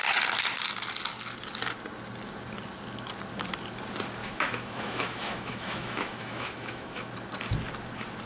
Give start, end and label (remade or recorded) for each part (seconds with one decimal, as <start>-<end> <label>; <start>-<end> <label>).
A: 0.0-4.2 recorded; 4.2-7.1 remade; 7.1-8.3 recorded

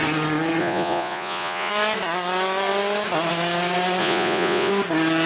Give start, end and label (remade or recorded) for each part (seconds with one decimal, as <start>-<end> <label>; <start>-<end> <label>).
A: 0.0-0.6 recorded; 0.6-1.7 remade; 1.7-4.0 recorded; 4.0-4.7 remade; 4.7-5.3 recorded

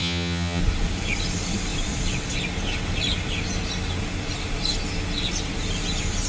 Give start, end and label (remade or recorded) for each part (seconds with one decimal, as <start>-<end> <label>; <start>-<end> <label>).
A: 0.0-0.6 remade; 0.6-6.3 recorded